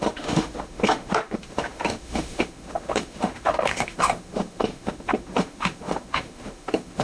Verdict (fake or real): fake